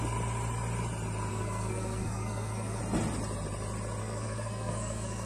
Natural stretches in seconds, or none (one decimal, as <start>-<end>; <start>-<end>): 0.0-1.3; 2.8-4.0